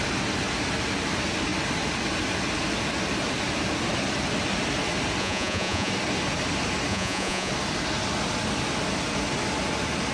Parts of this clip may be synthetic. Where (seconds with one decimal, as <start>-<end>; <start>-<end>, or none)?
5.2-5.9; 6.9-7.5